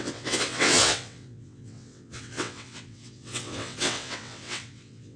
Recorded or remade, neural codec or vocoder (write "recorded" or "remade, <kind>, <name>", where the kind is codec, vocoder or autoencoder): remade, vocoder, WaveNeXt